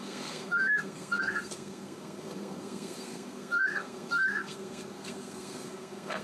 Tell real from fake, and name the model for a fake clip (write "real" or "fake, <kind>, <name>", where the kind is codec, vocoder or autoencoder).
fake, codec, SNAC